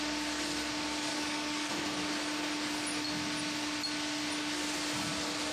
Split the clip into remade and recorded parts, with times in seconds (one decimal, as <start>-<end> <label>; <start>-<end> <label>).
0.0-1.1 recorded; 1.1-1.7 remade; 1.7-5.5 recorded